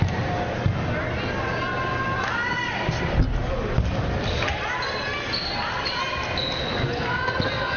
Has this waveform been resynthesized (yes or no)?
no